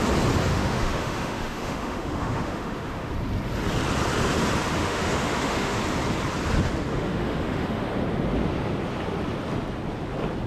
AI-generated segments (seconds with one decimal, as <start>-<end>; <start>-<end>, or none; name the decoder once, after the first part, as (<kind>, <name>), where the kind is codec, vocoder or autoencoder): 0.5-3.1 (autoencoder, DAC-VAE); 4.8-5.8; 6.9-7.8